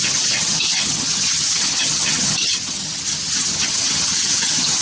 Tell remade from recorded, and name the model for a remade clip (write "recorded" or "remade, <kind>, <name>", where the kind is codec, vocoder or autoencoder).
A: remade, vocoder, HiFi-GAN